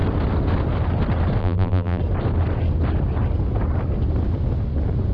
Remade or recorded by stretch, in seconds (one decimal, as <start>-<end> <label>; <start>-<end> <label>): 0.0-1.4 recorded; 1.4-2.0 remade; 2.0-5.1 recorded